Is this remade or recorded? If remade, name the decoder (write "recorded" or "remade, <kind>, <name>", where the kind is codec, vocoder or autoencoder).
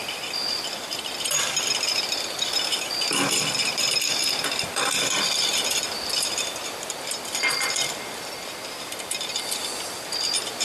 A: remade, vocoder, BigVGAN v2